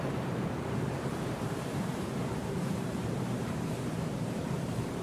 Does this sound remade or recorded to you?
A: remade